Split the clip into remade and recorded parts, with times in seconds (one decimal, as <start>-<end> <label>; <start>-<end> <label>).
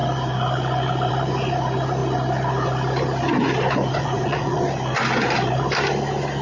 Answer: 0.0-3.9 recorded; 3.9-4.6 remade; 4.6-6.4 recorded